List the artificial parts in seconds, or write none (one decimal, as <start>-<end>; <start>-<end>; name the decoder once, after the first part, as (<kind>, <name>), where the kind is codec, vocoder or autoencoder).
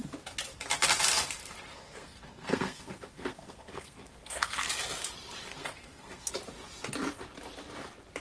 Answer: 1.8-4.7 (codec, SNAC); 5.5-6.3